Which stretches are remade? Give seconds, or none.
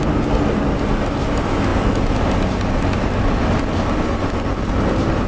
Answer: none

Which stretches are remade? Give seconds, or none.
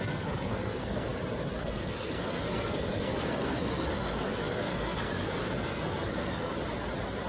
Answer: 0.0-1.1 (codec, SNAC); 1.6-6.5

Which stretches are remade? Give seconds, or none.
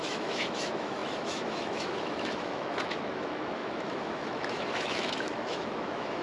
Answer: 0.0-6.2 (autoencoder, DAC-VAE)